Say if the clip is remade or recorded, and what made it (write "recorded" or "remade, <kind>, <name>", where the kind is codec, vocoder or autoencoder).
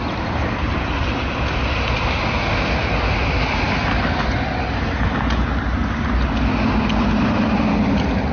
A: recorded